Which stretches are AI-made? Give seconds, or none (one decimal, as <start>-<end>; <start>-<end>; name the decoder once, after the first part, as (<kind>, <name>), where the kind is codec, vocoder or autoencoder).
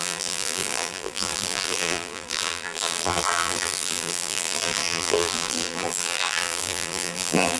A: 0.0-7.6 (vocoder, BigVGAN v2)